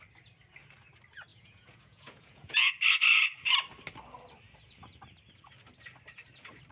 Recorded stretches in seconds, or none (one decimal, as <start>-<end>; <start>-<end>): 0.0-1.3; 2.7-6.7